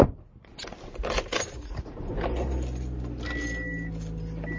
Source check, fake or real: real